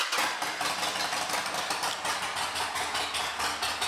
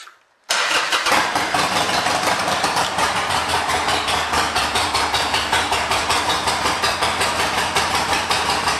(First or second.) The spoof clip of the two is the second